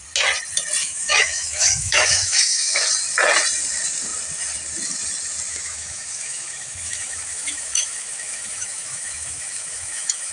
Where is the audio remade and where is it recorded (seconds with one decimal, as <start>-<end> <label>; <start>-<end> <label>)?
0.0-0.8 recorded; 0.8-2.8 remade; 2.8-5.5 recorded; 5.5-10.3 remade